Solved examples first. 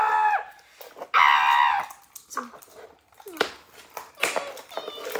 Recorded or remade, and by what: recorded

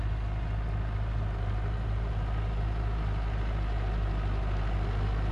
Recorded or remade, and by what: recorded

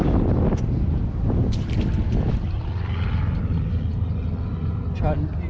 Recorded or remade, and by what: recorded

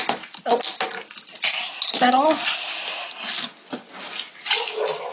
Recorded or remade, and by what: recorded